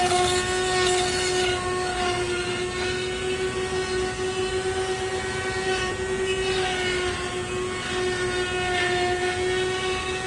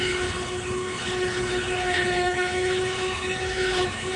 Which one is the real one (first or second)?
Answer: first